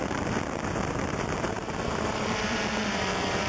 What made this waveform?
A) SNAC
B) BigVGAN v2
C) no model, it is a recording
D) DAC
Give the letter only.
B